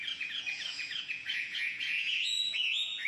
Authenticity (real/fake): fake